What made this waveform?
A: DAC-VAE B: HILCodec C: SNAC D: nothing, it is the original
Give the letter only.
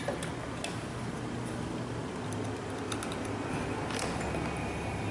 D